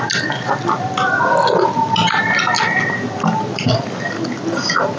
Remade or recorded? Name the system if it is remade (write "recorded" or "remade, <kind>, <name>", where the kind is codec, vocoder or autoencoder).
recorded